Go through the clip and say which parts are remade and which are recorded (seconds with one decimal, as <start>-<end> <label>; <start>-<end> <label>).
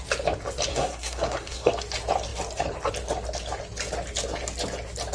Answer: 0.0-0.7 recorded; 0.7-1.7 remade; 1.7-5.1 recorded